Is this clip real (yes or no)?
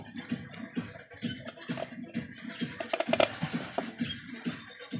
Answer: yes